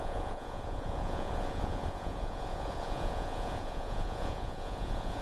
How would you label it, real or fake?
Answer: fake